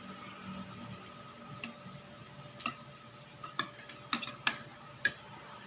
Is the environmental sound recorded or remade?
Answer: recorded